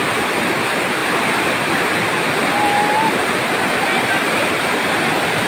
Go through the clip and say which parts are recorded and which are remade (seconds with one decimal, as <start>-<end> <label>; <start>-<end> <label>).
0.0-1.0 recorded; 1.0-2.2 remade; 2.2-5.5 recorded

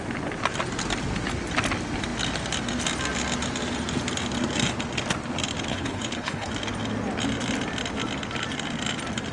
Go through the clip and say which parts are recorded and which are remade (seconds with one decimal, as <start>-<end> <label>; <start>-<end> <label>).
0.0-5.7 recorded; 5.7-6.5 remade; 6.5-9.3 recorded

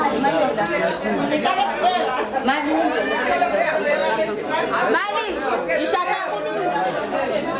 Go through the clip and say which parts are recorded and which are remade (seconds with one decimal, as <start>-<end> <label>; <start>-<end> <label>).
0.0-7.6 recorded

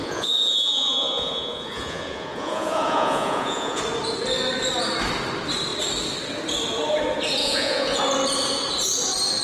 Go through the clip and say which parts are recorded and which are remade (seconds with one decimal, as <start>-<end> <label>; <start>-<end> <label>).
0.0-3.8 remade; 3.8-7.4 recorded; 7.4-8.0 remade; 8.0-9.4 recorded